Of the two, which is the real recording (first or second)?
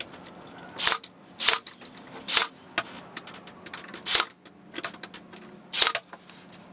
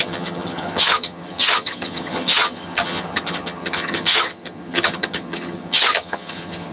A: first